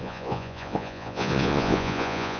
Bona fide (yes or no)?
no